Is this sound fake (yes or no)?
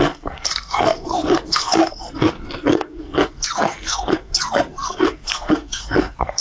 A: yes